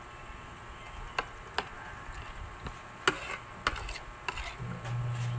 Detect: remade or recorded recorded